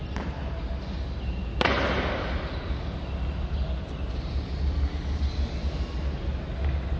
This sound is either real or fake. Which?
real